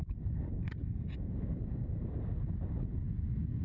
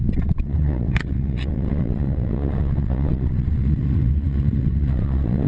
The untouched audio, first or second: first